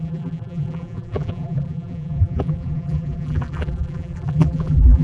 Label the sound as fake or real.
fake